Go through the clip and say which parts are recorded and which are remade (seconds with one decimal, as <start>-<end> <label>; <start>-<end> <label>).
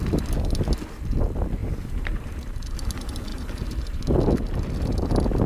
0.0-1.6 recorded; 1.6-2.7 remade; 2.7-3.3 recorded; 3.3-4.0 remade; 4.0-5.5 recorded